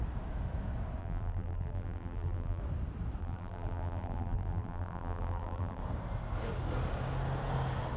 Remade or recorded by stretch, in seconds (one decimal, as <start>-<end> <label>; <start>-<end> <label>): 0.0-1.0 recorded; 1.0-2.6 remade; 2.6-3.2 recorded; 3.2-5.8 remade; 5.8-8.0 recorded